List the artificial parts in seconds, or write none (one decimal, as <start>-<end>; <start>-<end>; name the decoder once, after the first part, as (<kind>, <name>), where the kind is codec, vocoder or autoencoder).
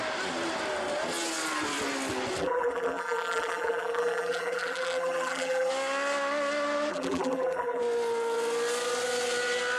2.4-5.7 (vocoder, BigVGAN v2); 6.9-7.8